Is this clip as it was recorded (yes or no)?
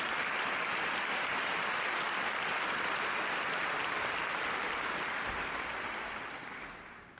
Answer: yes